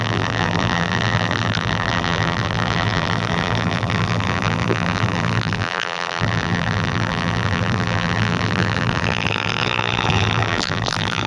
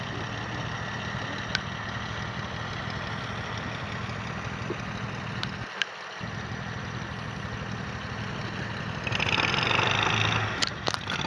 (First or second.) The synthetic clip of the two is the first